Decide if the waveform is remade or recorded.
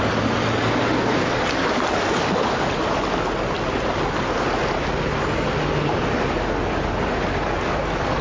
recorded